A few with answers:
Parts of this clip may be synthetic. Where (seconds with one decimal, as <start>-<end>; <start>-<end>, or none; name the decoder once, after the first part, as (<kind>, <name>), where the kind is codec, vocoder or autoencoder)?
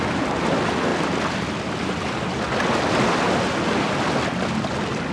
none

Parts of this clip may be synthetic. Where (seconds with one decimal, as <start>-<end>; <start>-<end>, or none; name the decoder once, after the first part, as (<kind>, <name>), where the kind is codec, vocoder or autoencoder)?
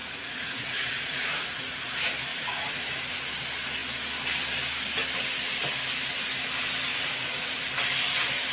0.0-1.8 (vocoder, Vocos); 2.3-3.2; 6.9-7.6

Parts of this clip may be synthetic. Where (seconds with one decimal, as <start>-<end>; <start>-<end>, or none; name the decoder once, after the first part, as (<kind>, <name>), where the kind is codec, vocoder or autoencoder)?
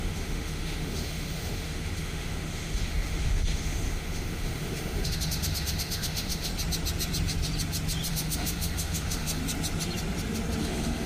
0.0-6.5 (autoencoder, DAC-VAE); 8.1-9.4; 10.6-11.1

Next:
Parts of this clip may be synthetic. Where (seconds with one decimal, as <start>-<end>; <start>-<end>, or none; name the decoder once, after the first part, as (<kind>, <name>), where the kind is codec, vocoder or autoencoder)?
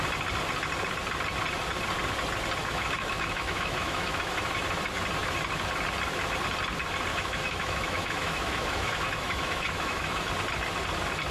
2.6-4.5 (autoencoder, DAC-VAE); 7.1-10.3